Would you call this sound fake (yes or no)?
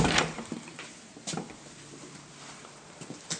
no